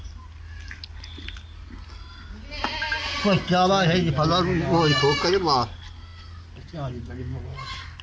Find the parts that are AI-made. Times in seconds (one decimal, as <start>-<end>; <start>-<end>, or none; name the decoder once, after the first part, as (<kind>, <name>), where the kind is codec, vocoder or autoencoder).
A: none